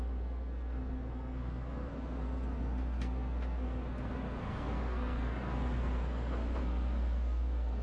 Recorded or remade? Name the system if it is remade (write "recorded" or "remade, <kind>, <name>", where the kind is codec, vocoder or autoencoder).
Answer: remade, codec, SNAC